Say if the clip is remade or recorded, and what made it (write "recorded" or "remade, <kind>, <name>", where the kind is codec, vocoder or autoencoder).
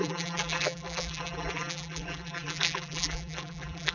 remade, vocoder, BigVGAN v2